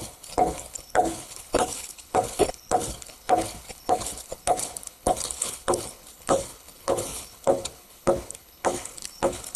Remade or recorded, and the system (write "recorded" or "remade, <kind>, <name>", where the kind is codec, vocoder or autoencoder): remade, codec, HILCodec